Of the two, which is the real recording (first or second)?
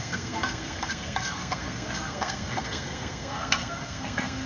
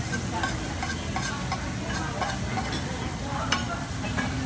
second